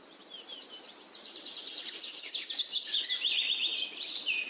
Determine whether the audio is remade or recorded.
recorded